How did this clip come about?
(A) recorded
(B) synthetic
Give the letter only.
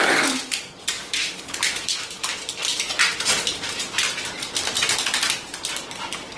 A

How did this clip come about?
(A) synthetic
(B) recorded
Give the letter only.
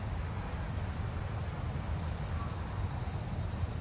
B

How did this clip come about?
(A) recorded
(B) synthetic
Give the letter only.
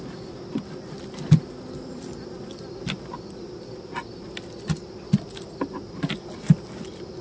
A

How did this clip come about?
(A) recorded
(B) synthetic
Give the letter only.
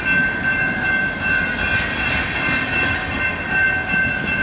A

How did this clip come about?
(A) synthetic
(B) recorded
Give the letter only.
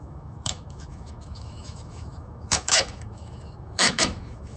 A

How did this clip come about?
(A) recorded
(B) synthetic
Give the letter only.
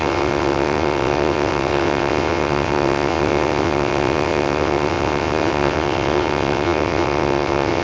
B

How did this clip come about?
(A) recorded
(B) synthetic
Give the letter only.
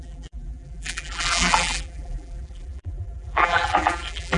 B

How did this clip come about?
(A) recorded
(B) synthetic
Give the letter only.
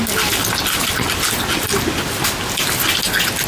A